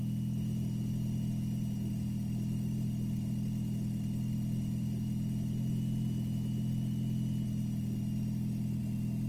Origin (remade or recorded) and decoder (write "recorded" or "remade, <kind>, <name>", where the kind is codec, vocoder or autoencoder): recorded